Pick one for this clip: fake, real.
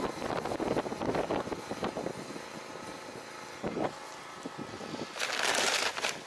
real